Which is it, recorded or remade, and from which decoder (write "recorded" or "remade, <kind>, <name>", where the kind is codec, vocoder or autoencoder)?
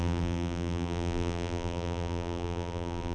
remade, vocoder, BigVGAN v2